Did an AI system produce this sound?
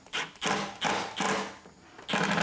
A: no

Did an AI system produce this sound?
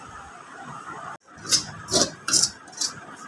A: no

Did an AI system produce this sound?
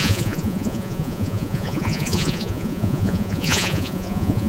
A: yes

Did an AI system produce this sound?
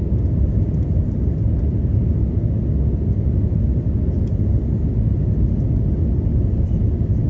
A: no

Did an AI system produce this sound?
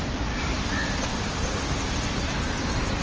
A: no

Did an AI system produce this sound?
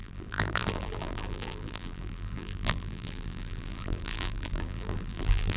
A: yes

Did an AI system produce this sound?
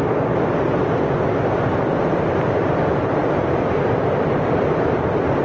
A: no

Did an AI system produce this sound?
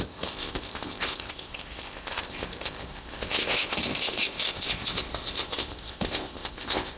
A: yes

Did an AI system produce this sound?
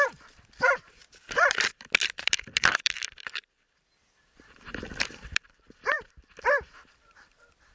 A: yes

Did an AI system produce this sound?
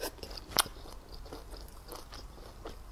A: no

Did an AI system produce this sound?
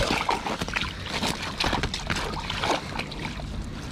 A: no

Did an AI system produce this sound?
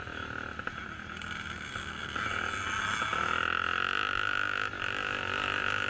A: no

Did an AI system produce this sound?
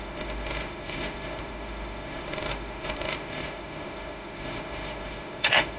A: yes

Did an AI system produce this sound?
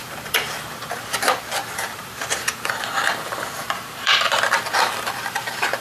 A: yes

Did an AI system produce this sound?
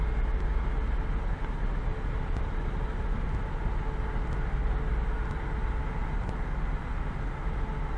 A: no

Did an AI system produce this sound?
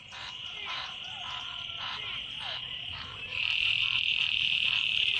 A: yes